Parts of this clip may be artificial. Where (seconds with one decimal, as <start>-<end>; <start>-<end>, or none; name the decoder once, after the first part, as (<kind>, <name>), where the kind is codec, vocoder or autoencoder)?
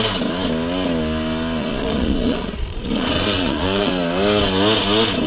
1.6-3.9 (vocoder, Vocos)